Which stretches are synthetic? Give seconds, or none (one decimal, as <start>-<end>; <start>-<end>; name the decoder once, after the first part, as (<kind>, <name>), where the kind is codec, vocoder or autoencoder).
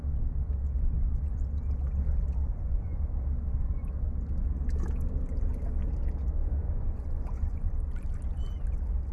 2.5-3.0 (vocoder, Vocos); 6.4-7.7